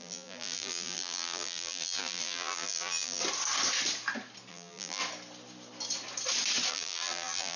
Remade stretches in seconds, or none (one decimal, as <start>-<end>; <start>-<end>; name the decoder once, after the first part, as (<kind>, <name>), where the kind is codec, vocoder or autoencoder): 0.0-3.2 (vocoder, BigVGAN v2); 4.5-5.0; 6.7-7.6